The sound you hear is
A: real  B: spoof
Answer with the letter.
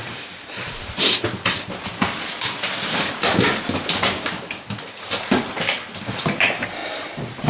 B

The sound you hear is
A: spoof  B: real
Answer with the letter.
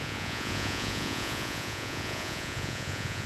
A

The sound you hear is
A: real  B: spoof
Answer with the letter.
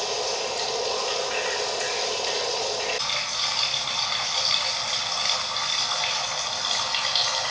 A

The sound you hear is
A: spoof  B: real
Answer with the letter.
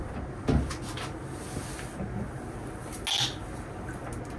B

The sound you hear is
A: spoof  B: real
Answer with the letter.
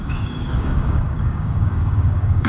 A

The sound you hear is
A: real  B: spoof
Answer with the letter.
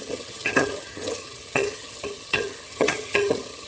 B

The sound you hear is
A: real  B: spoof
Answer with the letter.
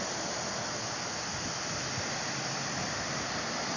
A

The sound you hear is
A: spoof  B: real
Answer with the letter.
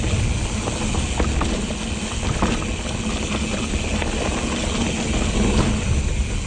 B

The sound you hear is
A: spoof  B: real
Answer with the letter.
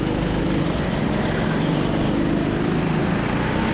B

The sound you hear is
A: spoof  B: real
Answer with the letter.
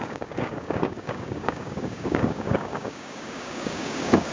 A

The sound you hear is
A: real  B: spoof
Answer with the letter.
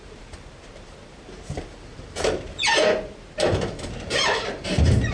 B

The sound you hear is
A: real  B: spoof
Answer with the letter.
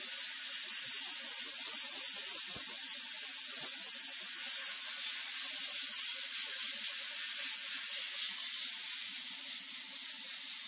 A